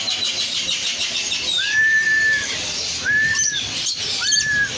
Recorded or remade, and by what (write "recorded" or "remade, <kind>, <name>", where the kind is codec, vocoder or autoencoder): remade, vocoder, BigVGAN v2